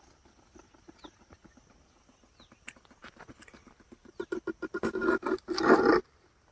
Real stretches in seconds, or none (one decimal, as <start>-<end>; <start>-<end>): 0.0-6.5